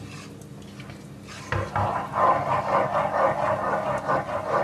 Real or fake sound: real